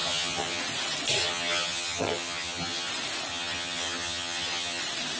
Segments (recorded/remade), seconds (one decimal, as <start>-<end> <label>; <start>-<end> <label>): 0.0-0.6 remade; 0.6-1.2 recorded; 1.2-2.9 remade; 2.9-3.3 recorded; 3.3-4.8 remade; 4.8-5.2 recorded